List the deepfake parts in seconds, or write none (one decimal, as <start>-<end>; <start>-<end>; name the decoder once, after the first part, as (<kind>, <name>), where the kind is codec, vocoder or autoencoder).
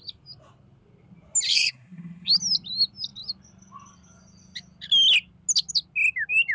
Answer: 1.5-2.3 (codec, SNAC)